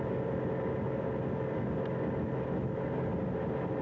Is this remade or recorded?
recorded